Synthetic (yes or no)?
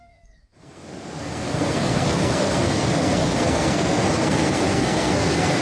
yes